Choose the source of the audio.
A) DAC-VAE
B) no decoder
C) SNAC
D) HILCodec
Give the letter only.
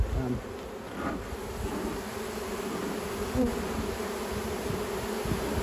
B